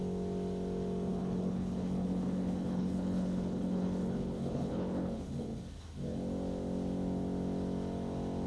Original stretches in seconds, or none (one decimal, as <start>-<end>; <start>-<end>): 0.0-1.1; 5.6-8.5